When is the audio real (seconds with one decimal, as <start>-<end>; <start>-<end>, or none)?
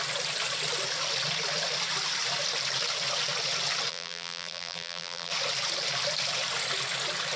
0.0-3.9; 5.3-7.4